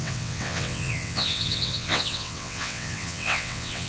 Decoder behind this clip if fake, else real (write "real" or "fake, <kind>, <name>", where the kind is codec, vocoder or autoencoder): fake, vocoder, WaveNeXt